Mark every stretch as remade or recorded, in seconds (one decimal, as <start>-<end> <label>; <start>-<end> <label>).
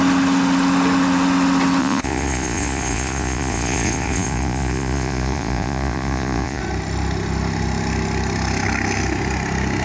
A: 0.0-1.8 recorded; 1.8-6.6 remade; 6.6-9.8 recorded